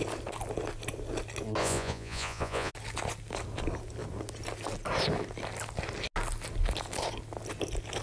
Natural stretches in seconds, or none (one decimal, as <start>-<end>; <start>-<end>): 0.0-1.6; 2.7-8.0